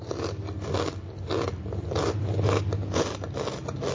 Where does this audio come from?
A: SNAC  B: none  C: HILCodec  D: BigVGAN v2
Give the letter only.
B